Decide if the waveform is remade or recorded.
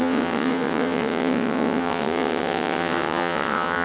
remade